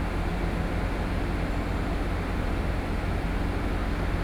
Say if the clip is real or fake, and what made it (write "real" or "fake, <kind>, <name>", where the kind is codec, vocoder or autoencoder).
real